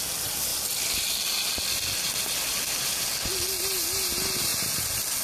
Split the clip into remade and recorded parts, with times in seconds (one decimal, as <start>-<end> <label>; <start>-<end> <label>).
0.0-5.2 recorded